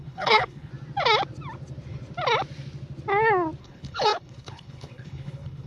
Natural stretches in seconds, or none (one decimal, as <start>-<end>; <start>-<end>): 0.7-3.6